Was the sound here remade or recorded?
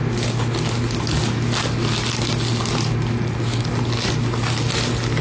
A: recorded